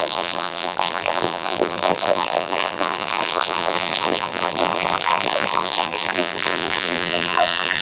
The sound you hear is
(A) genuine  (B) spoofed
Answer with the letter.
B